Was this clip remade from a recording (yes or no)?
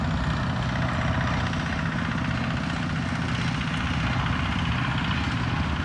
no